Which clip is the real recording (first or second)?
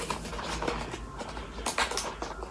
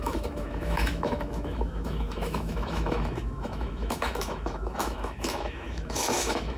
first